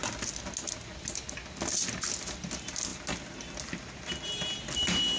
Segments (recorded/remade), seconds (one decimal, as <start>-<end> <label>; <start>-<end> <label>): 0.0-5.2 recorded